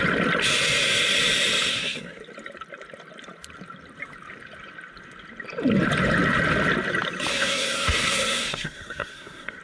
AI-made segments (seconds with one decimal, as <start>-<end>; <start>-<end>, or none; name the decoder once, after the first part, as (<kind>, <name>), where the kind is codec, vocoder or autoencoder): 1.7-2.2 (codec, SNAC); 7.3-9.6